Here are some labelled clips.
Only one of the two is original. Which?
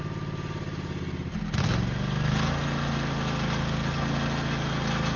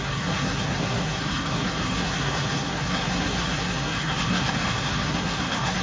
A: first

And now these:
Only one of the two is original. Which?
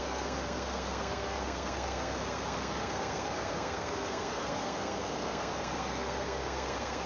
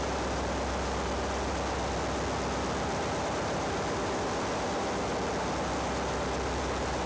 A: second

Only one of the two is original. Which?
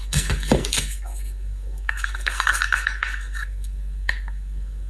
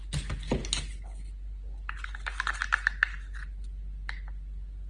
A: second